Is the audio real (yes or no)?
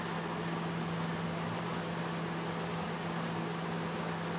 yes